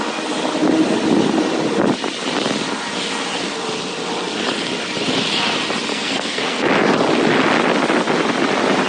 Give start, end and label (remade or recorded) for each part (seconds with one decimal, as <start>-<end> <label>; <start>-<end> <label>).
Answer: 0.0-5.9 recorded; 5.9-6.7 remade; 6.7-8.9 recorded